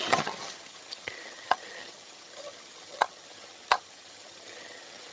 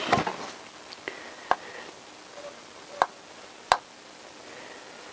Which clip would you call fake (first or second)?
first